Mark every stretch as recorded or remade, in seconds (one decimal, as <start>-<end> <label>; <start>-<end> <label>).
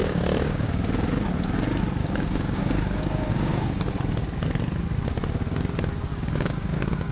0.0-0.8 remade; 0.8-2.0 recorded; 2.0-3.8 remade; 3.8-6.1 recorded; 6.1-7.1 remade